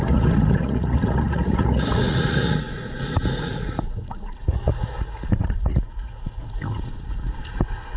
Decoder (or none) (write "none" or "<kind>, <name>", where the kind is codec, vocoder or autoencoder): vocoder, Vocos